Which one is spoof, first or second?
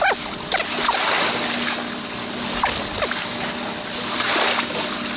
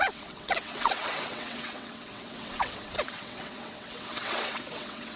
second